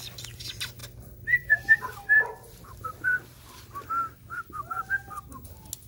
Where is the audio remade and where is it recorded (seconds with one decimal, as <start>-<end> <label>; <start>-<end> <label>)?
0.0-0.8 recorded; 0.8-3.9 remade; 3.9-5.9 recorded